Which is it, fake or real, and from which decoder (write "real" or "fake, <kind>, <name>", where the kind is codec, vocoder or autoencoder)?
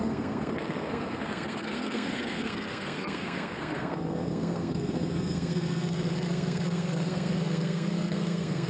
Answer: fake, codec, SNAC